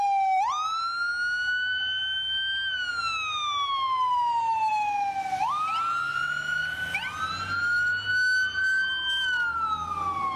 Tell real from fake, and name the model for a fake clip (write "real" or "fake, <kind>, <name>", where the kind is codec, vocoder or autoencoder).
real